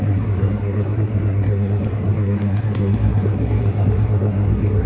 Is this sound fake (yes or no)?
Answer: yes